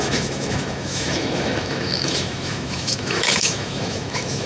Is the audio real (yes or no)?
no